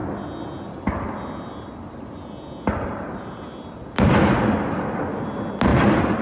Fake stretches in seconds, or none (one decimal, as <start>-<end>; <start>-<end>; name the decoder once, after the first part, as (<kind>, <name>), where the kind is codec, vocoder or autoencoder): none